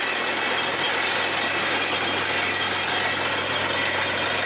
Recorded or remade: recorded